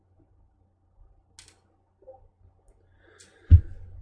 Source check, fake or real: real